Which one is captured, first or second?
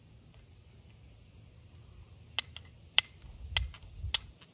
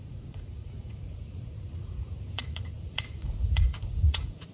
first